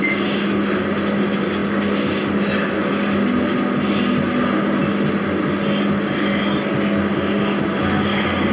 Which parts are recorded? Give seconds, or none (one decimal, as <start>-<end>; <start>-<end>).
0.0-8.5